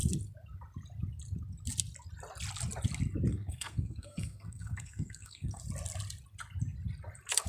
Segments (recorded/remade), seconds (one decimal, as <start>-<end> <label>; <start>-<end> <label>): 0.0-3.3 recorded; 3.3-5.6 remade; 5.6-7.5 recorded